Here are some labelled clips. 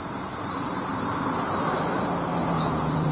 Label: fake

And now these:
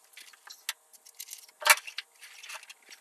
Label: real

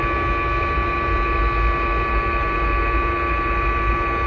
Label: real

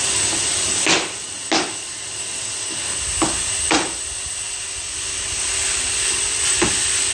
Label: real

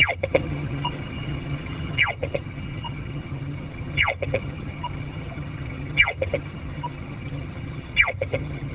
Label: fake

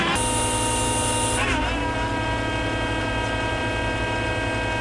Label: real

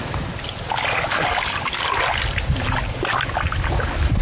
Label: real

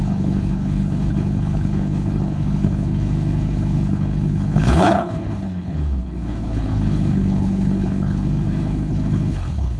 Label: fake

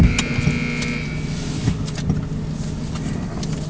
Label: real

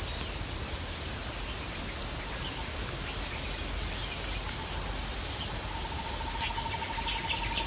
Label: real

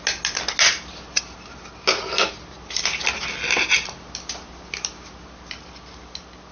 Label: real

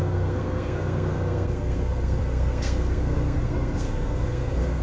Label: fake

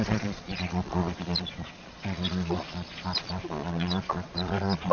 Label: fake